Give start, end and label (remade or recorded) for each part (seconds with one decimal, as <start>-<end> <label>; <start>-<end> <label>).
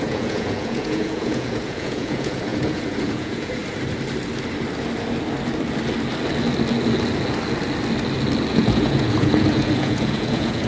0.0-3.6 remade; 3.6-8.5 recorded; 8.5-10.7 remade